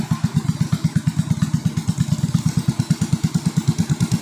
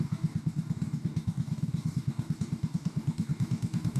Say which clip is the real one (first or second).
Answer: first